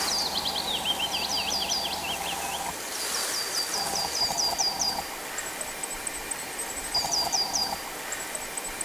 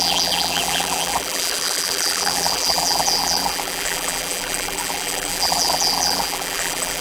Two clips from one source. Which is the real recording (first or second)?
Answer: first